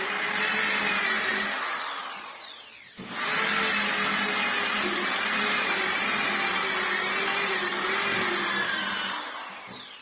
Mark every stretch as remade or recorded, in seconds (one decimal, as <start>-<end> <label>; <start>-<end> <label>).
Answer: 0.0-10.0 recorded